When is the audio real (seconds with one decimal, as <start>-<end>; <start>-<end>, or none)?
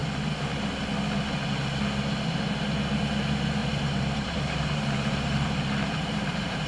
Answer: 0.0-3.6